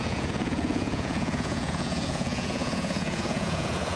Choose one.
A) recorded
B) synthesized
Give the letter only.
B